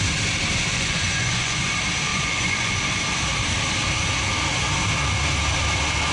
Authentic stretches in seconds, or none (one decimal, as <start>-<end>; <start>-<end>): 0.0-0.7; 1.7-2.1; 2.8-6.1